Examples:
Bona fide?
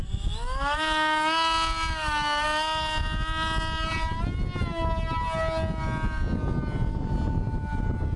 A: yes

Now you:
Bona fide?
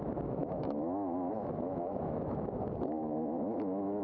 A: no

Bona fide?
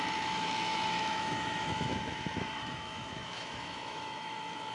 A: no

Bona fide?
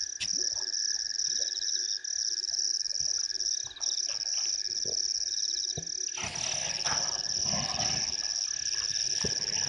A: yes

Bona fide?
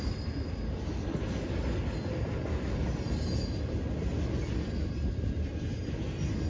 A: yes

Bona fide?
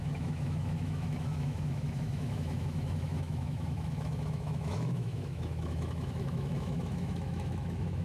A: no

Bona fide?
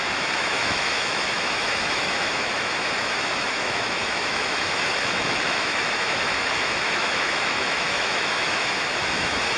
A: no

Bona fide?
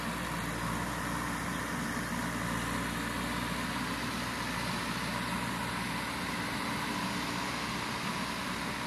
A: yes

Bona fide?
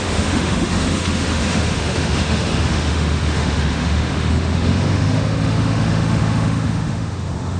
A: no